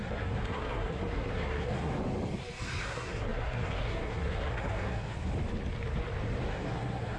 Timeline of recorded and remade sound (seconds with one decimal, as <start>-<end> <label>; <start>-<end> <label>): 0.0-1.9 remade; 1.9-2.8 recorded; 2.8-5.3 remade; 5.3-6.5 recorded; 6.5-7.2 remade